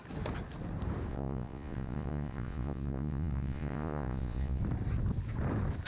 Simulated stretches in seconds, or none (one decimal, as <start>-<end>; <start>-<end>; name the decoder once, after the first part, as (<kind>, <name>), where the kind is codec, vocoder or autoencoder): 1.1-4.6 (vocoder, Vocos)